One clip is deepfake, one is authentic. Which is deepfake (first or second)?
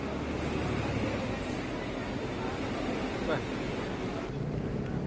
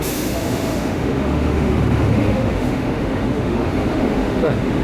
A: second